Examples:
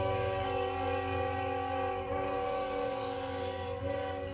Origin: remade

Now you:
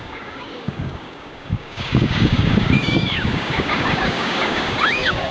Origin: remade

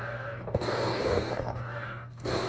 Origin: remade